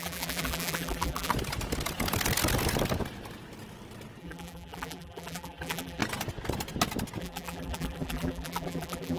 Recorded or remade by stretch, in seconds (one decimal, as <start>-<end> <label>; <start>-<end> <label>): 0.0-1.3 remade; 1.3-4.2 recorded; 4.2-6.0 remade; 6.0-7.2 recorded; 7.2-9.2 remade